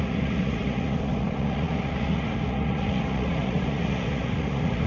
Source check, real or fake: fake